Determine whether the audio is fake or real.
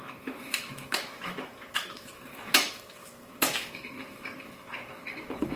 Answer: fake